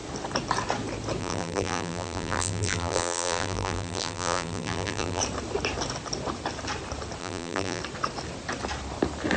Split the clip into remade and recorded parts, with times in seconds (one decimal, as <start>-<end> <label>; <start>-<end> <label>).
0.0-1.2 recorded; 1.2-5.2 remade; 5.2-7.2 recorded; 7.2-7.8 remade; 7.8-9.4 recorded